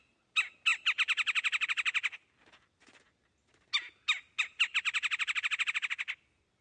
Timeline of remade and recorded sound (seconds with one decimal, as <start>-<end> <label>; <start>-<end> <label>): 0.0-6.6 recorded